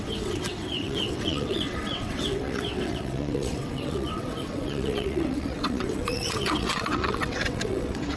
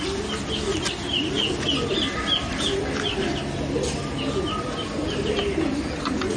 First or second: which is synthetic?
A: first